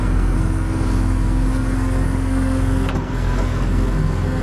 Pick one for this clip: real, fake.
fake